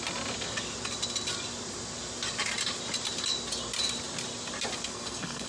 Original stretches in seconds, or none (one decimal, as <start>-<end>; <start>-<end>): 0.0-4.9